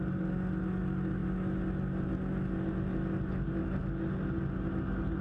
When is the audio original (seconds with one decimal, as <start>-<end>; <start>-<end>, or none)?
0.0-5.2